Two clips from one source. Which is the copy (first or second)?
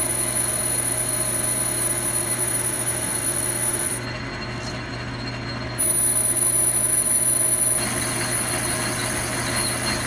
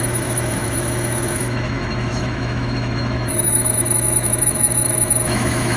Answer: second